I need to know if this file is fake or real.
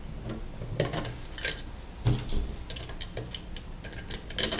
real